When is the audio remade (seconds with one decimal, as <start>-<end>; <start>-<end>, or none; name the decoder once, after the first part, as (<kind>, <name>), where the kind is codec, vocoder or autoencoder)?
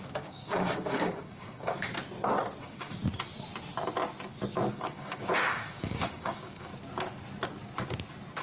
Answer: 0.0-1.9 (codec, DAC); 2.6-3.0; 4.7-6.7